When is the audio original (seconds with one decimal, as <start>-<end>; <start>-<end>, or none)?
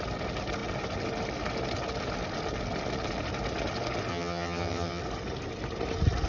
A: 0.0-4.1; 5.0-6.3